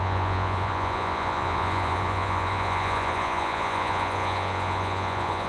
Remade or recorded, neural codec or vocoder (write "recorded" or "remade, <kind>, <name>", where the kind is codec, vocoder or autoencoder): remade, vocoder, Vocos